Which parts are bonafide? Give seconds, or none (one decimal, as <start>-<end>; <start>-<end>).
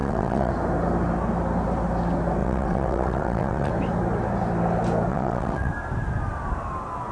0.5-2.4; 3.7-5.1; 5.7-7.1